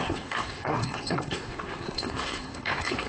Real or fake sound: fake